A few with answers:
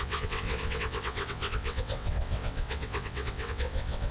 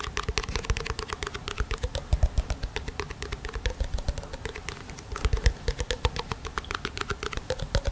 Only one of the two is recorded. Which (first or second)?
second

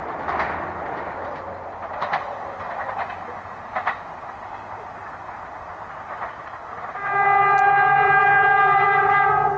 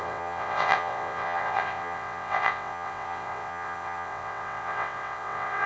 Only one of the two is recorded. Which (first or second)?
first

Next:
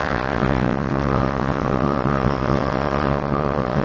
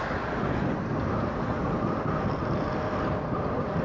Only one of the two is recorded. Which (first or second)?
second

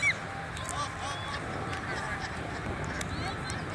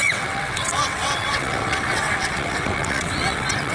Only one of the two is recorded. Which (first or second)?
first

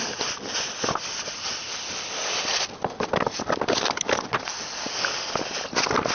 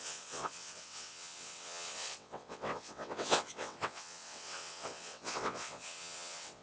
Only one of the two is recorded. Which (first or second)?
first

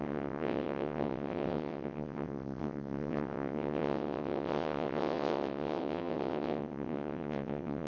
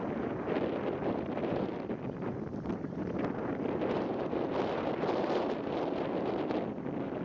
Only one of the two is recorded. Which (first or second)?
second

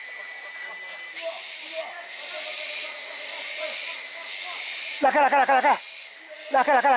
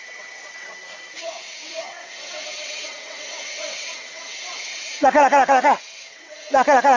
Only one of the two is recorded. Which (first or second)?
first